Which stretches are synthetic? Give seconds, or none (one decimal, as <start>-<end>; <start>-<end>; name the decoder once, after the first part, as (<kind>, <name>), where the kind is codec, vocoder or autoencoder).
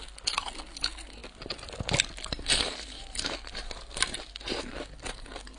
none